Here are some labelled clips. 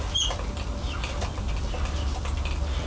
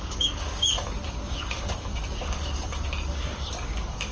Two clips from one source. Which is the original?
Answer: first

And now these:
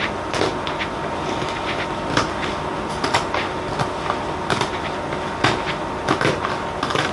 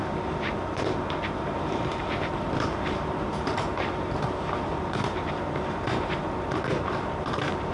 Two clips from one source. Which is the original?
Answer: first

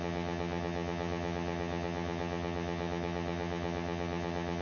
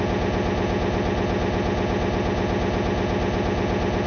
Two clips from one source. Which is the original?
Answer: second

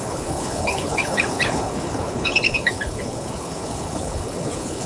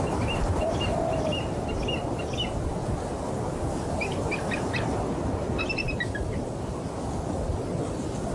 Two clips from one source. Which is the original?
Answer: second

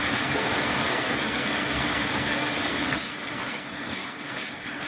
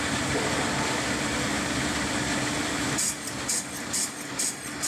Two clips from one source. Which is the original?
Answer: second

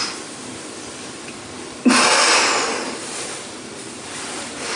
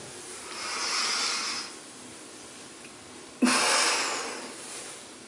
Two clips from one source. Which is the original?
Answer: second